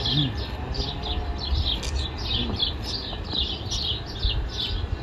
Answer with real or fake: real